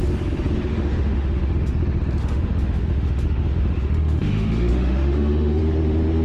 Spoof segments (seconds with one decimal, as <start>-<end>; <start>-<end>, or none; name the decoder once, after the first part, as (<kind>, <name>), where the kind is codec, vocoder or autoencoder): 0.7-1.7 (autoencoder, DAC-VAE); 2.2-5.6